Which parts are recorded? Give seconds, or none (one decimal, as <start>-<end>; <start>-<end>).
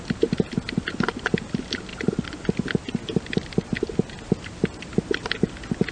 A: 0.0-5.9